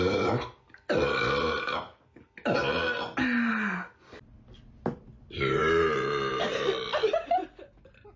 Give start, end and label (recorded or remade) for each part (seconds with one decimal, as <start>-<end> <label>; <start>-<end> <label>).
0.0-8.2 recorded